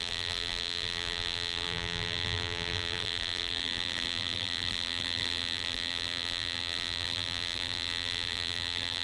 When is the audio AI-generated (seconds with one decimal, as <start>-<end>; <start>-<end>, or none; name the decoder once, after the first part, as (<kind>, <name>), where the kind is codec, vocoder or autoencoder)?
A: 0.0-9.0 (vocoder, BigVGAN v2)